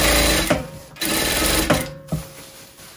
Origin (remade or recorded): remade